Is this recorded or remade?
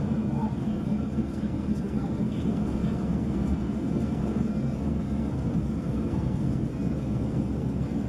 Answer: remade